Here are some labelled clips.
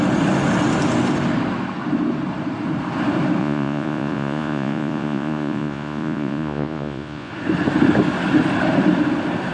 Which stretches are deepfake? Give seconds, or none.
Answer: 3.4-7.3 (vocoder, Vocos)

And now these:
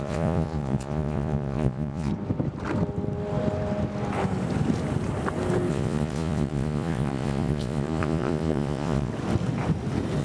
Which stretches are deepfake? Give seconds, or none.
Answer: 0.0-2.1 (vocoder, Vocos); 5.7-9.1

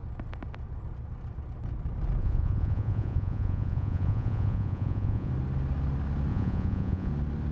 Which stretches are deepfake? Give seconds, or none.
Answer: 2.2-5.3 (vocoder, Vocos); 6.3-7.1

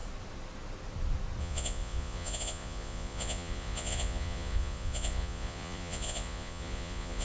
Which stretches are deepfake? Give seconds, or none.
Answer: 1.4-7.2 (vocoder, Vocos)

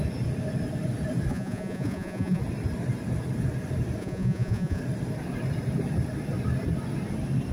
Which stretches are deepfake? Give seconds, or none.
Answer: 1.3-2.4 (vocoder, Vocos); 4.0-4.8

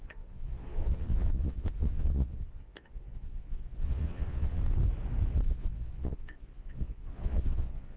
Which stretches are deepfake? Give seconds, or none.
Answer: 0.0-4.6 (vocoder, Vocos); 5.5-8.0

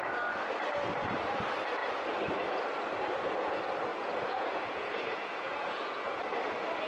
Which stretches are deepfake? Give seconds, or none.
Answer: 3.9-6.2 (vocoder, Vocos)